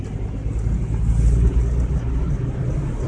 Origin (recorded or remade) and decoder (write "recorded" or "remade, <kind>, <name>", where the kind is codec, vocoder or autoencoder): recorded